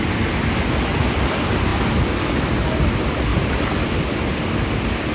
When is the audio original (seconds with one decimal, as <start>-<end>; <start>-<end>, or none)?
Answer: 0.0-3.3; 4.0-5.1